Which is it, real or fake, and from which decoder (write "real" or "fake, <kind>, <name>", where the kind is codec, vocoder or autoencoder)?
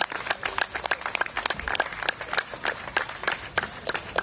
real